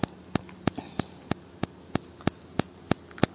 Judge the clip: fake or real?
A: real